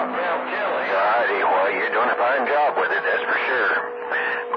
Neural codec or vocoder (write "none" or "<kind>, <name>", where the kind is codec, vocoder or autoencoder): none